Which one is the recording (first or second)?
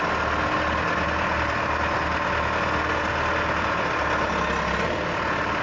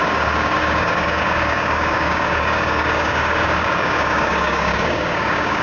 first